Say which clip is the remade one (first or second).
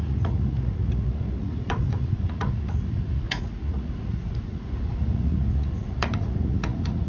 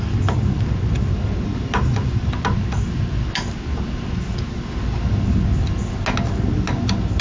first